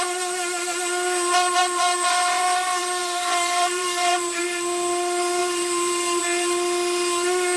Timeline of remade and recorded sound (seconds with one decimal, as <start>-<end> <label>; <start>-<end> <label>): 0.0-1.6 recorded; 1.6-2.4 remade; 2.4-3.0 recorded; 3.0-4.4 remade; 4.4-5.4 recorded; 5.4-6.2 remade; 6.2-7.6 recorded